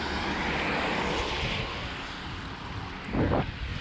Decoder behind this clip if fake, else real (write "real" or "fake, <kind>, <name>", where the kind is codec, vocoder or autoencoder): real